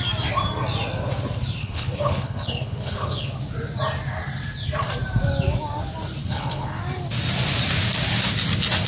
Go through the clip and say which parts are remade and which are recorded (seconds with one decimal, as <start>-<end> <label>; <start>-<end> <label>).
0.0-1.6 recorded; 1.6-3.3 remade; 3.3-6.2 recorded; 6.2-6.8 remade; 6.8-8.9 recorded